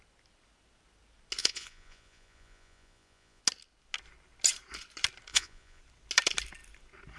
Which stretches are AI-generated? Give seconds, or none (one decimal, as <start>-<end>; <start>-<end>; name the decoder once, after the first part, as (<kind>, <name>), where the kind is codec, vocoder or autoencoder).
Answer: 1.4-3.4 (vocoder, Vocos); 5.3-5.8